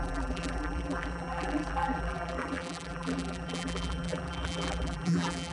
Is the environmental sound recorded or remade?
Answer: remade